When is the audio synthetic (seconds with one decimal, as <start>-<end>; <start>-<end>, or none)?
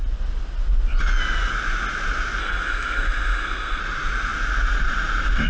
2.4-3.8